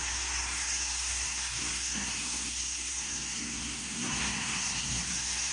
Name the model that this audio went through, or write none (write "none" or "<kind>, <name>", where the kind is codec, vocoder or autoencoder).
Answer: codec, SNAC